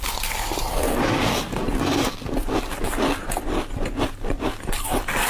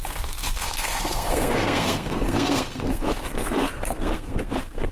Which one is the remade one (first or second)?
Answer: second